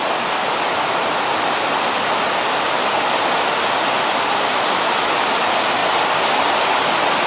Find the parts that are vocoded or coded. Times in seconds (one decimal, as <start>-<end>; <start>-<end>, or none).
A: none